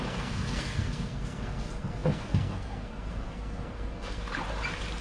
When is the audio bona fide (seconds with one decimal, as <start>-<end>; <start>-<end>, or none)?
4.3-5.0